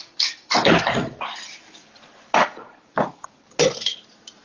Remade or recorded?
recorded